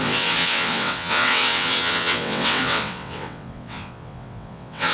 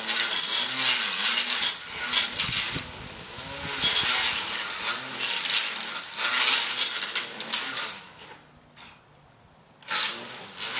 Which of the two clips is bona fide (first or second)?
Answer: second